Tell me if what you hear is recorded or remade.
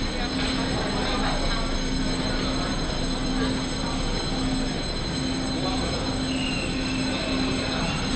recorded